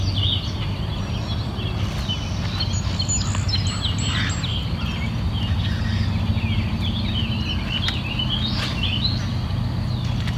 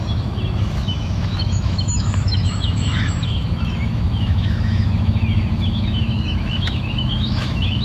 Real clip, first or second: first